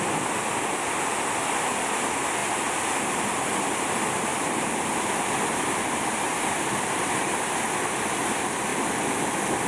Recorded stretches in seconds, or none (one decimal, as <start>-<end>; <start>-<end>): 0.0-9.7